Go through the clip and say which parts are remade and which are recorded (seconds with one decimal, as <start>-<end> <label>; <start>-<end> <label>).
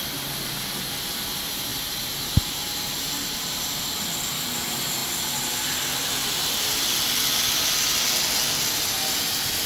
0.0-1.7 recorded; 1.7-3.8 remade; 3.8-9.7 recorded